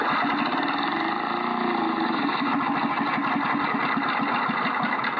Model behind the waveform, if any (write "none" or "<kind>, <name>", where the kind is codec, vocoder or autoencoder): none